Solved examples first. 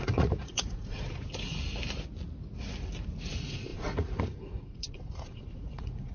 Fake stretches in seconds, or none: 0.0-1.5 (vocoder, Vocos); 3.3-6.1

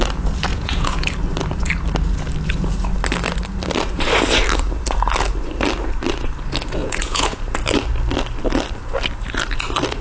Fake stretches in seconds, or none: 0.5-1.1 (vocoder, Vocos); 6.8-7.4

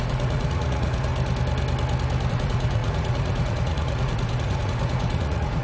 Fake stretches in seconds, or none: 0.0-1.1 (vocoder, Vocos); 2.3-5.6